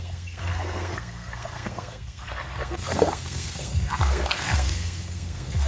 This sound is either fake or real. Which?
fake